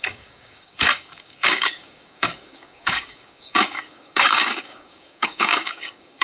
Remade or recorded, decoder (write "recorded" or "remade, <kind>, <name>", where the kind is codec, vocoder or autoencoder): remade, codec, DAC